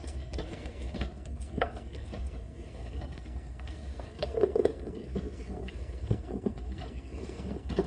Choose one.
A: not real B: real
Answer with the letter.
A